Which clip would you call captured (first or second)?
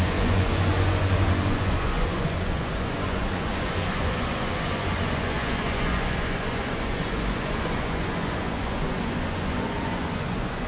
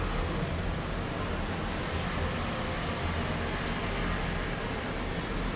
second